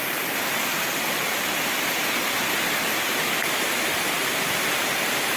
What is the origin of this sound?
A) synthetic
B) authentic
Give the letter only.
B